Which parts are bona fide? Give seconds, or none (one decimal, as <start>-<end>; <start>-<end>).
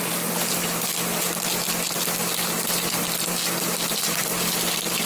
0.9-3.9; 4.3-5.1